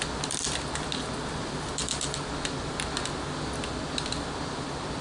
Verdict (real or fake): real